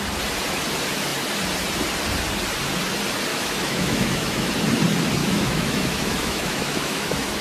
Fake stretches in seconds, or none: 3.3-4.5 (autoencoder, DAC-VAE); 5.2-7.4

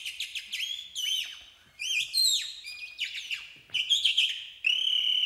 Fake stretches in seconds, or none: none

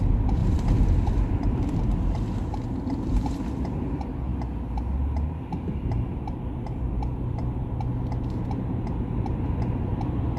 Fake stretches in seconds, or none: 0.4-1.8 (vocoder, BigVGAN v2)

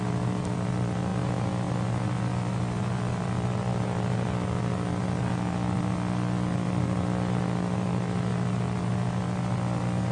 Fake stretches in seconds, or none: none

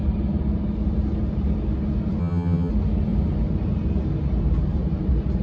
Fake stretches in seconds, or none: 2.2-2.7 (vocoder, HiFi-GAN)

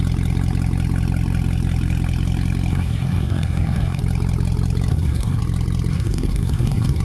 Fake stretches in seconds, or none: 2.7-4.0 (codec, SNAC); 4.9-5.4; 5.9-7.0